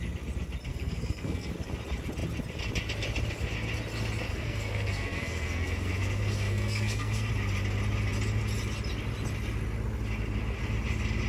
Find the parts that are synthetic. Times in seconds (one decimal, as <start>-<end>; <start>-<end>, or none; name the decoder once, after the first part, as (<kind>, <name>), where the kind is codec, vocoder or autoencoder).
0.7-1.5 (codec, SNAC); 4.3-7.3

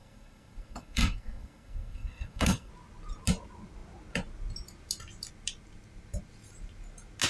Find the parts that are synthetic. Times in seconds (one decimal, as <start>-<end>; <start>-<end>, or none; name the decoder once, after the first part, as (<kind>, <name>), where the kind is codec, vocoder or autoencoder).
0.0-2.7 (codec, SNAC)

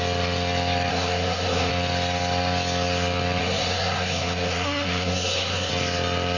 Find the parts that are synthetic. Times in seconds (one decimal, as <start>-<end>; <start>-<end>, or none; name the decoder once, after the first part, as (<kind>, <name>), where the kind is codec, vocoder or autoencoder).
0.9-1.7 (codec, SNAC); 3.4-5.7